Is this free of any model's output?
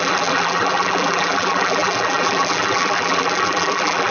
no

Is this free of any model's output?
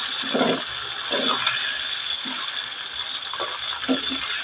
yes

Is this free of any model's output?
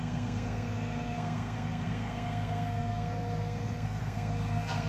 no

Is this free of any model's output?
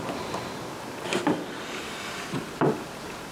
yes